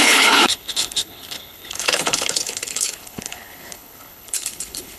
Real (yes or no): no